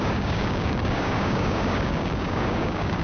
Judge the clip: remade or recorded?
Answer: remade